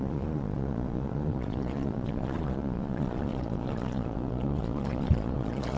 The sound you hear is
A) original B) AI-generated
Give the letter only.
B